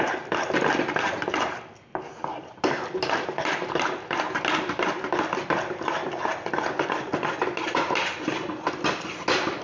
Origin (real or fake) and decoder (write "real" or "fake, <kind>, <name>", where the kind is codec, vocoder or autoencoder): real